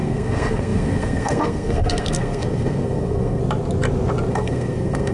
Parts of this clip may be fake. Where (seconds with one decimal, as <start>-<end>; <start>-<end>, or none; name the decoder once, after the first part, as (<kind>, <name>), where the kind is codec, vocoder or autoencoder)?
0.0-3.4 (codec, SNAC); 4.3-5.1